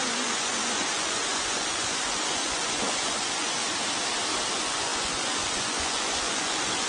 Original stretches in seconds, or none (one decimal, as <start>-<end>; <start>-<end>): 3.7-4.5